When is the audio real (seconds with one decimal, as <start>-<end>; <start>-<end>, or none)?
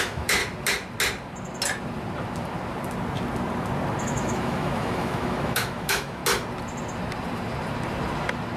0.4-4.0; 6.2-8.6